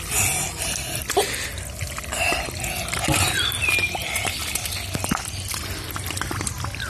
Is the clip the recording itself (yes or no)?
yes